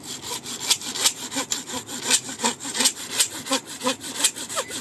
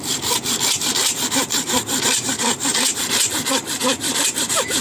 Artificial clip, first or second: second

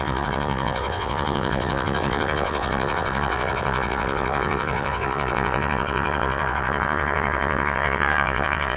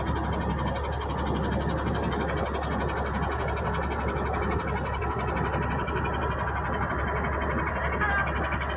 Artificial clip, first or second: first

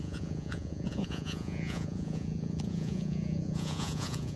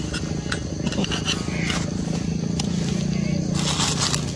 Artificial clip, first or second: first